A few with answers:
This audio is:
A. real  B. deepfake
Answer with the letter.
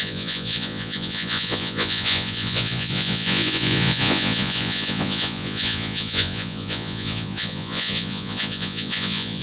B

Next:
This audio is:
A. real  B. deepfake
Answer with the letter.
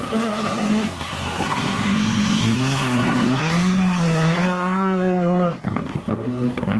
B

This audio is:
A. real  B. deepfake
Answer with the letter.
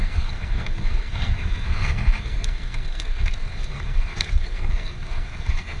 B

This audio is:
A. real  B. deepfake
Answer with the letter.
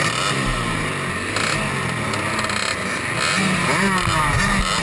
A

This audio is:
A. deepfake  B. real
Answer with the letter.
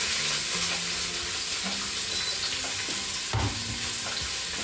B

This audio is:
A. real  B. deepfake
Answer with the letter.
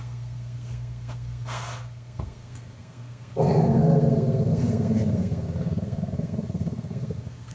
B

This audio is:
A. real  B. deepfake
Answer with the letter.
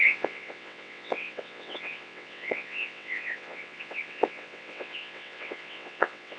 B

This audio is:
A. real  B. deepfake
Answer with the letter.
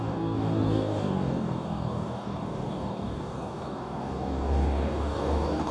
B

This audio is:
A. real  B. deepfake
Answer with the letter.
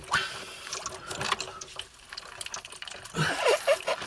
A